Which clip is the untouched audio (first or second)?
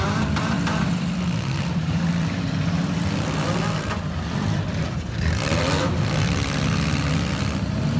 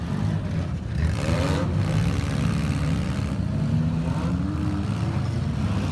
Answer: second